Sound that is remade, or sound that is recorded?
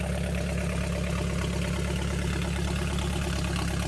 recorded